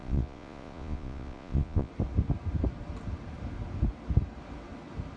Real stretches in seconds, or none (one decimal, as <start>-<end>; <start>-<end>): 1.9-5.2